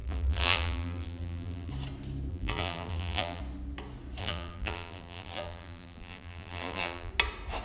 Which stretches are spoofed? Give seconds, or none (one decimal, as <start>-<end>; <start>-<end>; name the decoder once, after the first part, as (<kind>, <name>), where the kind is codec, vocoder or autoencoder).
0.0-1.7 (vocoder, BigVGAN v2); 2.3-3.4; 4.2-7.1